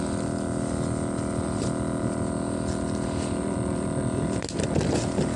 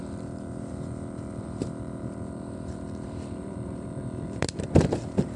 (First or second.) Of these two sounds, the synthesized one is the second